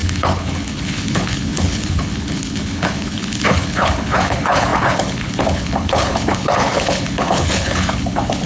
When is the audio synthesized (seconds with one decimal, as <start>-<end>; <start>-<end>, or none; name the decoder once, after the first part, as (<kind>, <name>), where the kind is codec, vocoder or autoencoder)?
0.0-8.5 (codec, HILCodec)